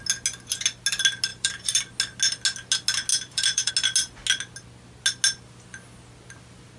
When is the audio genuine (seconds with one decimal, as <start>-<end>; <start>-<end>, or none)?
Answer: 0.0-1.3; 1.8-3.1; 3.7-6.8